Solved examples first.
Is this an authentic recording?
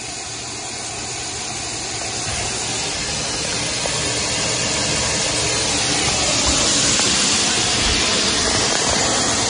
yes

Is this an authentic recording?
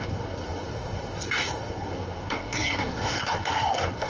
no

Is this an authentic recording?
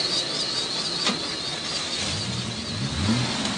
yes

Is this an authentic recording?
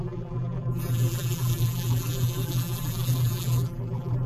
no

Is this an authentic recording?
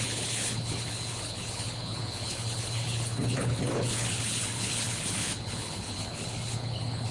no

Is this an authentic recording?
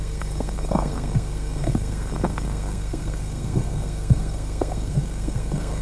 no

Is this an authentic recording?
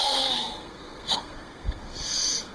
no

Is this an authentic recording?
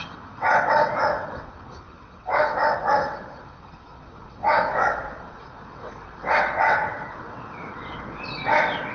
no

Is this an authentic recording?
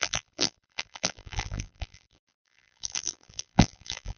no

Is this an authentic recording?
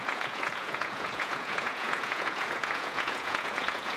no